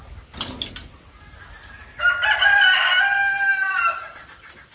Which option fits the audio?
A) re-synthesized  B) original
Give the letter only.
B